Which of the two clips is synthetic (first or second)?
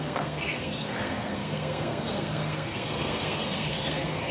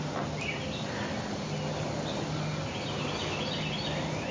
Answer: first